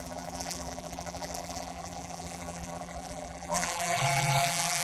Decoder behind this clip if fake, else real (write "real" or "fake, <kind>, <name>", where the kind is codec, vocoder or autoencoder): fake, vocoder, BigVGAN v2